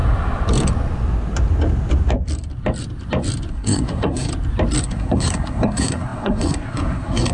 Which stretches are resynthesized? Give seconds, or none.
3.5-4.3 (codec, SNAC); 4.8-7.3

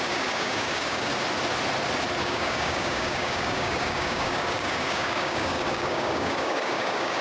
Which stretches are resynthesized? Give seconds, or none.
0.0-1.1 (codec, DAC); 2.2-7.2

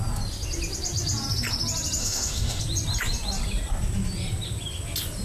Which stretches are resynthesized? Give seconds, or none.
2.0-2.6 (autoencoder, DAC-VAE)

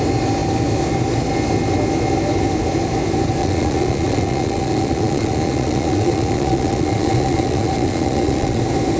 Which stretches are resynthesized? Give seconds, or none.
3.4-8.6 (vocoder, Vocos)

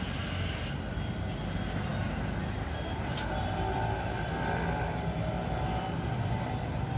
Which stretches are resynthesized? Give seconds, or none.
none